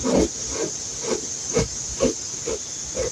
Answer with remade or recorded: recorded